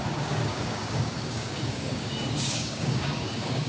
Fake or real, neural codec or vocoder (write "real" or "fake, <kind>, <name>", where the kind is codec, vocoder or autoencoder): fake, codec, DAC